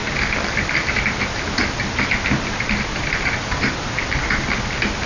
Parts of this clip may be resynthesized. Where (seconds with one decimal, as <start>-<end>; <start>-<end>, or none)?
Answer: none

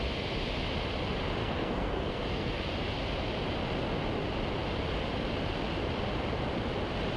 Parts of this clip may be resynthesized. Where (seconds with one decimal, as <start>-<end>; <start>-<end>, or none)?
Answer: 1.4-2.6

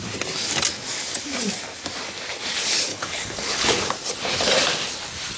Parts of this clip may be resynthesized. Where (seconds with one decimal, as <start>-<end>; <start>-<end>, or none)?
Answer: 2.9-3.9

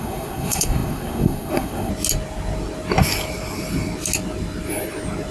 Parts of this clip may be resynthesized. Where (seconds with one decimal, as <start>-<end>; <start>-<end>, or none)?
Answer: 0.0-1.9

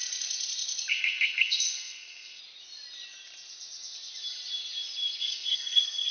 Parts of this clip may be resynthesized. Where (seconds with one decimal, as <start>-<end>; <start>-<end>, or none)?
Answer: 0.9-2.4; 5.2-6.1

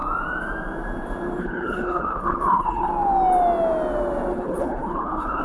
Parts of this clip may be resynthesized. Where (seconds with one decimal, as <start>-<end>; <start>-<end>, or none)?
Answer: 1.4-2.9; 4.3-5.4